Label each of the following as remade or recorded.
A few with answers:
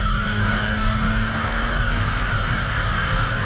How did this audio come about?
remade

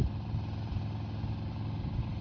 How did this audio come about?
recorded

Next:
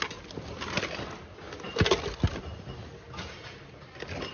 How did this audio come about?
recorded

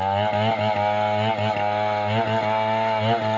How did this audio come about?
recorded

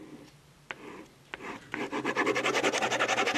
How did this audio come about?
recorded